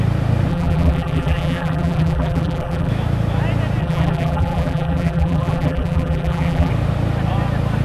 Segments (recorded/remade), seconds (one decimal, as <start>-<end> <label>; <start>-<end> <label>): 0.0-0.5 recorded; 0.5-2.9 remade; 2.9-3.8 recorded; 3.8-6.7 remade; 6.7-7.8 recorded